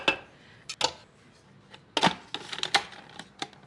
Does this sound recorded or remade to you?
recorded